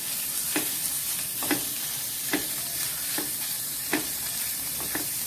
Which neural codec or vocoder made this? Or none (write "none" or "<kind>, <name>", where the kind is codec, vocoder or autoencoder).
vocoder, BigVGAN v2